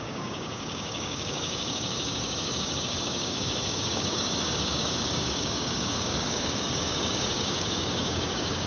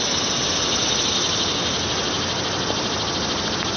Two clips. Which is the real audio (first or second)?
second